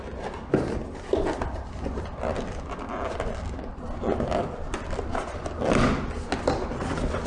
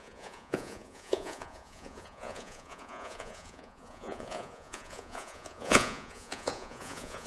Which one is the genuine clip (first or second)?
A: first